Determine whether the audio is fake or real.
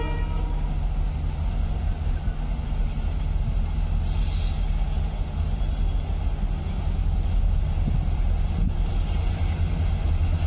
real